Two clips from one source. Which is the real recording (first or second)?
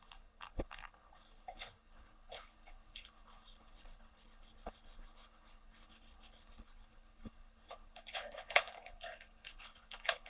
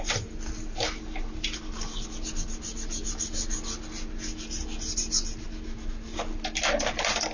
second